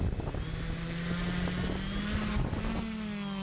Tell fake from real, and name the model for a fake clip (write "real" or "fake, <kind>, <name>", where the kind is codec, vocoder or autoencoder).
real